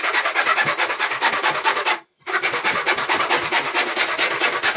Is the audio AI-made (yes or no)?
no